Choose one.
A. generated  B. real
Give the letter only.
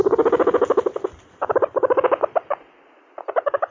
B